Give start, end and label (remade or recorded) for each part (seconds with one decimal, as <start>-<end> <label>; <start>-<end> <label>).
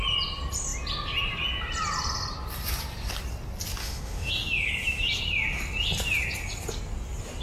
0.0-3.8 recorded; 3.8-4.3 remade; 4.3-7.4 recorded